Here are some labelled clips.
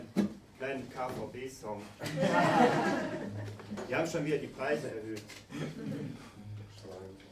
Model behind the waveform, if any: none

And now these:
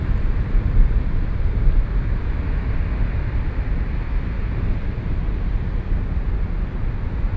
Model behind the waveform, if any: none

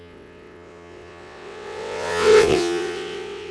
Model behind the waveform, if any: vocoder, WaveNeXt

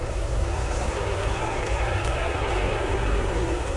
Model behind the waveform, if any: codec, SNAC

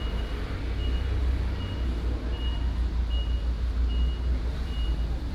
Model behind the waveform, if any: none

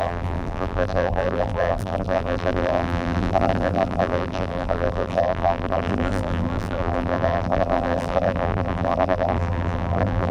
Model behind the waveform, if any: vocoder, BigVGAN v2